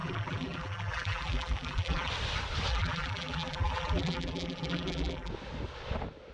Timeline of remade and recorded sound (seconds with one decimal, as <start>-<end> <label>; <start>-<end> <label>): 0.0-2.1 remade; 2.1-2.7 recorded; 2.7-5.3 remade; 5.3-6.3 recorded